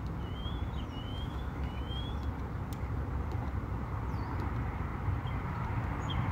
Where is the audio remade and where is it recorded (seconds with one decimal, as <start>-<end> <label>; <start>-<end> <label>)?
0.0-1.1 recorded; 1.1-2.2 remade; 2.2-6.3 recorded